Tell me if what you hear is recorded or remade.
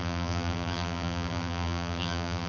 remade